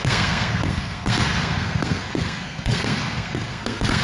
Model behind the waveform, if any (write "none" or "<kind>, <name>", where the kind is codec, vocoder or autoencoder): codec, SNAC